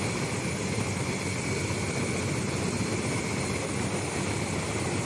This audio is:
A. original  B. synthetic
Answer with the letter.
A